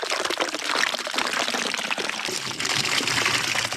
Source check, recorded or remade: recorded